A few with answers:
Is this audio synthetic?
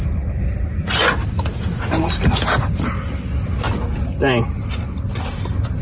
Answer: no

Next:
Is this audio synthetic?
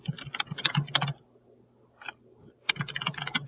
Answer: no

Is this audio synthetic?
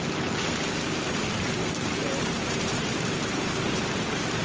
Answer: yes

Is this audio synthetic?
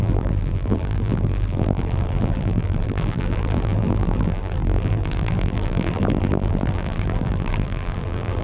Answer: yes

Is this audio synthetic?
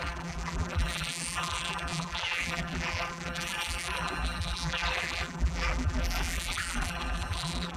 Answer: yes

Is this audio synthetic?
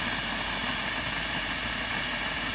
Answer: yes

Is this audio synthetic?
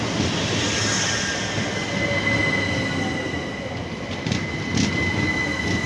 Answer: no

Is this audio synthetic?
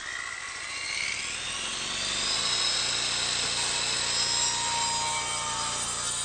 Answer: no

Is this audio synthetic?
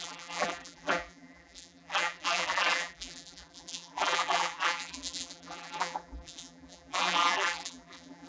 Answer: yes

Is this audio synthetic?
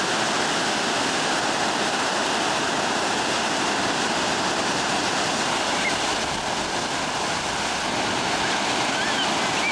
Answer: no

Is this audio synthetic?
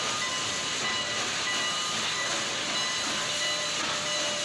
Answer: no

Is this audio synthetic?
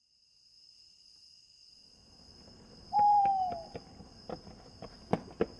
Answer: no